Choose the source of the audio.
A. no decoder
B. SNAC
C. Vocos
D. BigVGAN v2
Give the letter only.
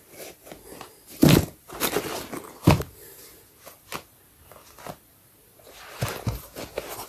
A